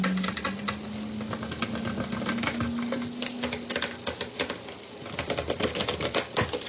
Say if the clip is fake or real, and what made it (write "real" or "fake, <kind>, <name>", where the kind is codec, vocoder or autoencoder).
real